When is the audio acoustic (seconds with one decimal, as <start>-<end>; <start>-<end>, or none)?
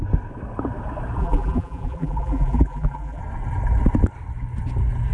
0.0-1.2; 3.2-5.1